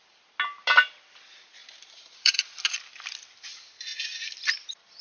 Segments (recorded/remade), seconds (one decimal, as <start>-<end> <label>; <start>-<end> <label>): 0.0-1.6 recorded; 1.6-2.4 remade; 2.4-5.0 recorded